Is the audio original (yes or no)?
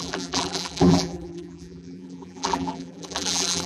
no